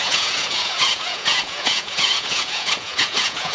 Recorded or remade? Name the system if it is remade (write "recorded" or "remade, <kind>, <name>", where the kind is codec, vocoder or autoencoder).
remade, vocoder, Vocos